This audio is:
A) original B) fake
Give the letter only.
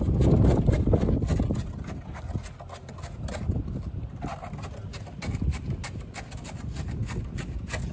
A